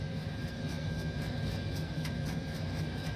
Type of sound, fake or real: fake